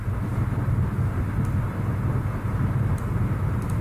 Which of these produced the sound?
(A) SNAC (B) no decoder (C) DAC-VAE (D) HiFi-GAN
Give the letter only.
B